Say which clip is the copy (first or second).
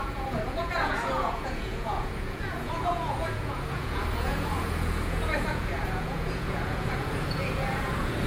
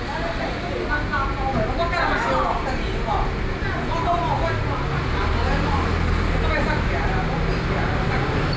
first